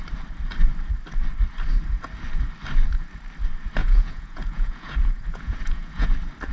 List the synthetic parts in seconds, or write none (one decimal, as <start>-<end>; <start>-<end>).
3.8-6.1